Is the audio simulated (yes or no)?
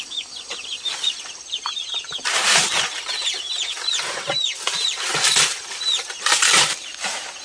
no